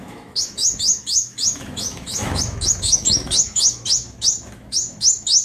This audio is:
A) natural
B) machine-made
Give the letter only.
B